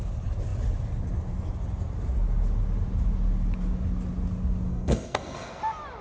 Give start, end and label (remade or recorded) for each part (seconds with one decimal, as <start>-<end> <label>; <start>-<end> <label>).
0.0-4.7 recorded; 4.7-5.6 remade; 5.6-6.0 recorded